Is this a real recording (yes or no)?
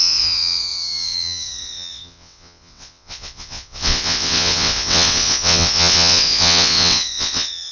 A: no